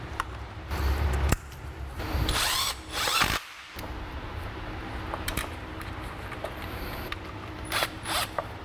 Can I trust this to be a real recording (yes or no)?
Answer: no